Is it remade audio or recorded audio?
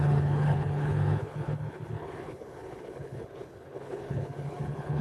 remade